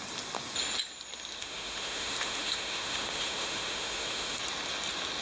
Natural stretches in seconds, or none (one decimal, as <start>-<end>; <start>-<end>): 0.0-1.4; 4.4-5.2